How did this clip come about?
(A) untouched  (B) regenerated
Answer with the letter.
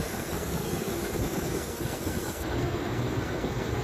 B